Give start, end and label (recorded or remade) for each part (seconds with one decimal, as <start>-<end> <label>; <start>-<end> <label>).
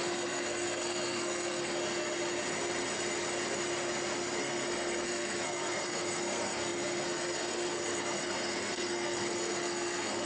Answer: 0.0-1.8 remade; 1.8-4.4 recorded; 4.4-10.3 remade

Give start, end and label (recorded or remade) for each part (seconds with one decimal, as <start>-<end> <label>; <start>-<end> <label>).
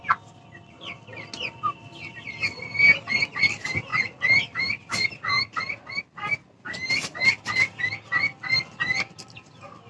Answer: 0.0-3.9 recorded; 3.9-6.0 remade; 6.0-9.9 recorded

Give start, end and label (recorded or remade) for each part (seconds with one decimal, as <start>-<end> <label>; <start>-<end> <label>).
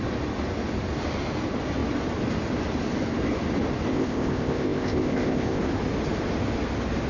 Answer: 0.0-3.9 recorded; 3.9-5.6 remade; 5.6-7.1 recorded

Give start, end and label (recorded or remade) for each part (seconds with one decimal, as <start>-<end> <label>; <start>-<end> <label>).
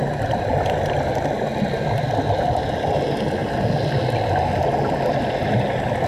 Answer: 0.0-6.1 recorded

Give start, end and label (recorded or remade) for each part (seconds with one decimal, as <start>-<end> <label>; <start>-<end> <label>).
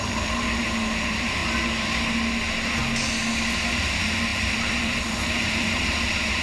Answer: 0.0-1.4 remade; 1.4-3.7 recorded; 3.7-6.4 remade